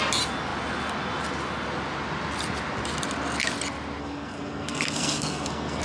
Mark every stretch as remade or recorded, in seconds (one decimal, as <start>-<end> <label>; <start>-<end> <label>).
0.0-4.0 recorded; 4.0-5.8 remade